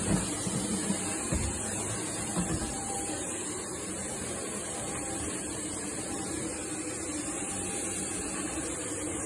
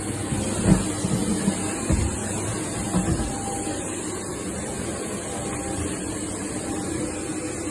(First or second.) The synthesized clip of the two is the first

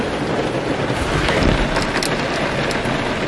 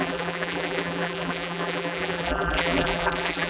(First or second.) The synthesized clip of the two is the second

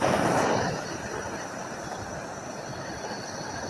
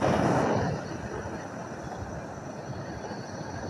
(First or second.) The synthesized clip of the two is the first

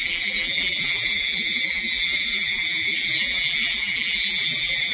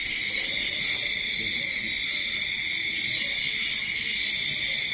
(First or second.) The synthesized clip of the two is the first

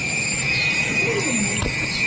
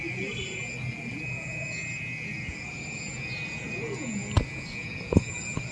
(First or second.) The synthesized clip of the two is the first